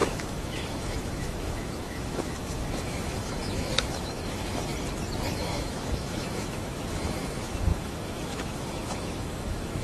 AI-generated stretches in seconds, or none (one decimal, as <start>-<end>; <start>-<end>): 0.0-4.7; 5.3-9.8